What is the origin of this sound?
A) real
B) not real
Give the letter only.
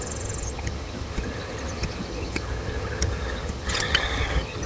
B